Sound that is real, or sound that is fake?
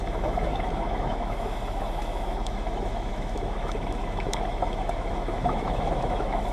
fake